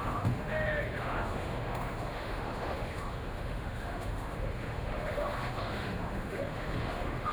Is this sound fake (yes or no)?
yes